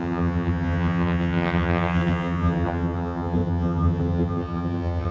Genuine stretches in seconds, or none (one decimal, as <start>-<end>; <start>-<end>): none